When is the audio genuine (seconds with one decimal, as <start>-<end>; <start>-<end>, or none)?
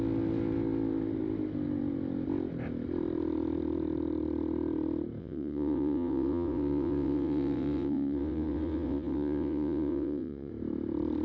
0.0-5.2; 10.5-11.2